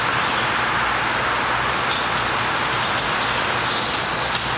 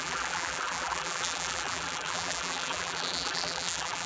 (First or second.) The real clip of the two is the first